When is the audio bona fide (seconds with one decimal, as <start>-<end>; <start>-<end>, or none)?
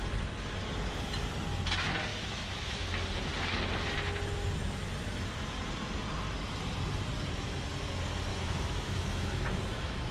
0.0-2.1; 2.8-8.3